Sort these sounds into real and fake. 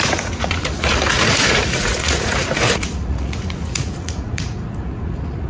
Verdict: fake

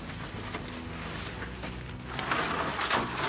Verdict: real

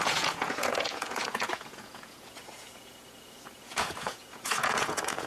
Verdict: fake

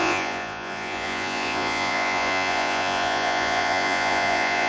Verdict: fake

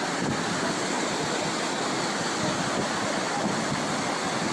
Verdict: real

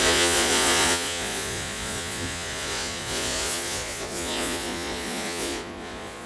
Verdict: fake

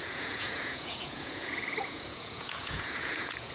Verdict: fake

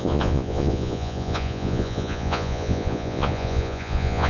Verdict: fake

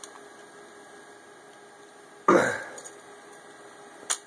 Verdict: real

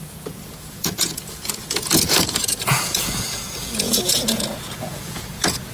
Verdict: fake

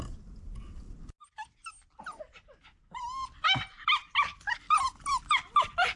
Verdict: real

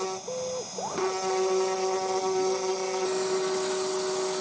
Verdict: real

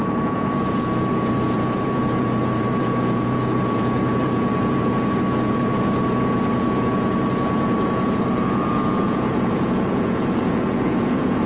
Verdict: fake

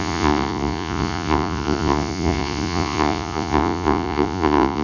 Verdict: fake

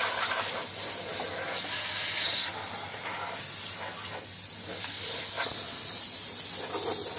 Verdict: real